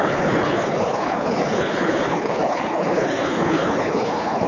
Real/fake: fake